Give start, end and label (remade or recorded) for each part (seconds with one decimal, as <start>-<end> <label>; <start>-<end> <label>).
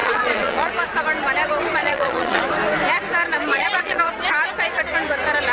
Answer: 0.0-0.7 remade; 0.7-1.8 recorded; 1.8-2.4 remade; 2.4-3.5 recorded; 3.5-4.1 remade; 4.1-5.5 recorded